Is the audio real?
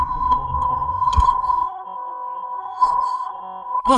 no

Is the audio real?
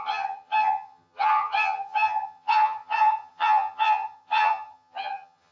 no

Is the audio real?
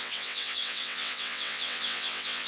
no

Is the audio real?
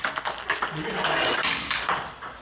yes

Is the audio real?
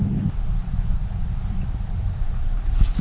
yes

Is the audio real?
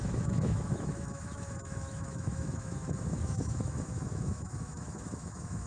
no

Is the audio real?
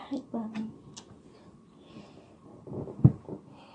yes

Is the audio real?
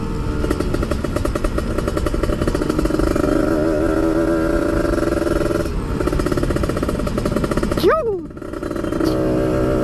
yes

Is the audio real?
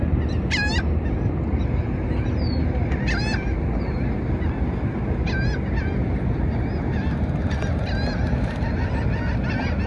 yes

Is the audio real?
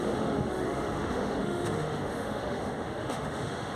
no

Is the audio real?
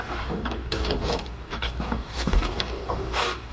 no